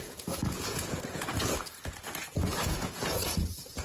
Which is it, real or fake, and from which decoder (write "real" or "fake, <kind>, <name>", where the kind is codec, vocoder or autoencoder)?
fake, vocoder, Vocos